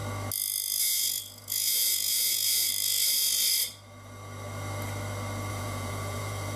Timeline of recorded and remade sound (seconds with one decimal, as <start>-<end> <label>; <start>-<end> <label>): 0.0-0.8 recorded; 0.8-2.7 remade; 2.7-5.5 recorded; 5.5-6.6 remade